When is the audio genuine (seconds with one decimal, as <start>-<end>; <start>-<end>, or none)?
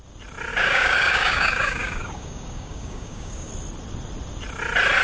0.0-0.5; 3.5-5.0